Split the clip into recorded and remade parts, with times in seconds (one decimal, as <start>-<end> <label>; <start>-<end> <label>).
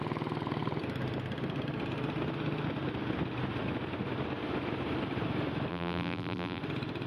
0.0-5.7 recorded; 5.7-6.6 remade; 6.6-7.1 recorded